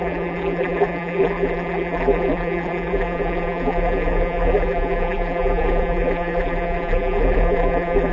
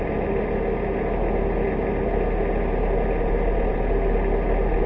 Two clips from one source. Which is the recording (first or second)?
second